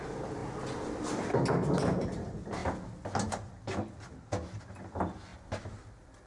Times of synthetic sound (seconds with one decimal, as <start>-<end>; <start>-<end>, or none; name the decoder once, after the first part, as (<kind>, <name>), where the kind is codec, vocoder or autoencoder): none